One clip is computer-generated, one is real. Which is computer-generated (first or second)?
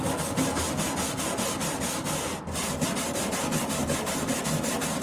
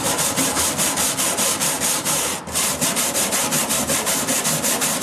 second